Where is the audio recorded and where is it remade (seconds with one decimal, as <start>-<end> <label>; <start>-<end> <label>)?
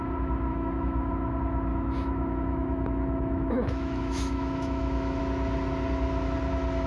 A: 0.0-0.5 recorded; 0.5-1.1 remade; 1.1-1.7 recorded; 1.7-5.2 remade; 5.2-6.9 recorded